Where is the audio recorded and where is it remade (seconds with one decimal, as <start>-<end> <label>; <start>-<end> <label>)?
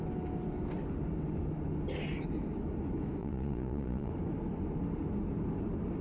0.0-3.2 recorded; 3.2-4.1 remade; 4.1-6.0 recorded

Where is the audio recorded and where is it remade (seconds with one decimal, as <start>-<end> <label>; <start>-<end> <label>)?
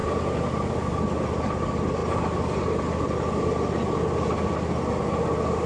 0.0-5.7 recorded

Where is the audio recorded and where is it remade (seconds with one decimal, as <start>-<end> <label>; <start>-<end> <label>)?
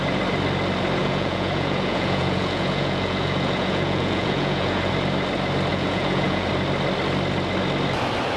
0.0-1.0 recorded; 1.0-4.9 remade; 4.9-5.7 recorded; 5.7-6.5 remade; 6.5-8.4 recorded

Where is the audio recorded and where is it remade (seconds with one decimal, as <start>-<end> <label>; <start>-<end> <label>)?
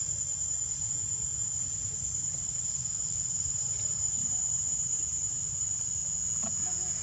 0.0-6.0 recorded; 6.0-7.0 remade